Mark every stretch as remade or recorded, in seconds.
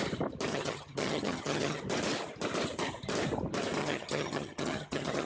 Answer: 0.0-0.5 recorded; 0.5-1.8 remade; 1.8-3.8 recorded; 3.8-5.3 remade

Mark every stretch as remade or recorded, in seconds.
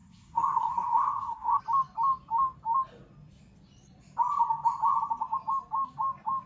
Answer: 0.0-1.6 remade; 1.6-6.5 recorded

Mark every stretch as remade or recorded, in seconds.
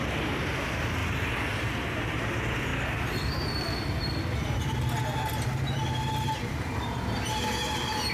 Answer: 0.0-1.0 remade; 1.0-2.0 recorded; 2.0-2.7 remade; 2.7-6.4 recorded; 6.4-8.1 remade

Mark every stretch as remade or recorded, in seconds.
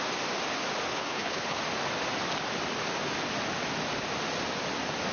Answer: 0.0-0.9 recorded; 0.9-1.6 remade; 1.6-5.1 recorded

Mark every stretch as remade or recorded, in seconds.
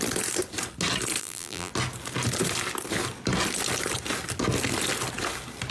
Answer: 0.0-1.2 recorded; 1.2-1.7 remade; 1.7-5.7 recorded